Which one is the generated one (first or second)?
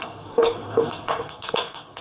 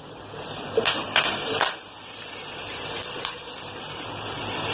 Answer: first